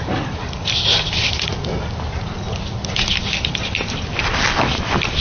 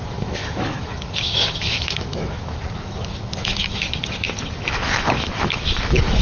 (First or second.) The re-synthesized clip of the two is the second